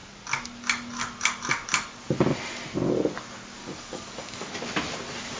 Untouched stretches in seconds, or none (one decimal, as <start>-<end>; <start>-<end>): 0.0-3.6; 4.5-5.4